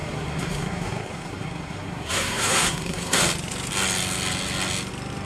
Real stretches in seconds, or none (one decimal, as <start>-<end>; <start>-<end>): 3.2-5.3